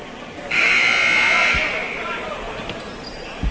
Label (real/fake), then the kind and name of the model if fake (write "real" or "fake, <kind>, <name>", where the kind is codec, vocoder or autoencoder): real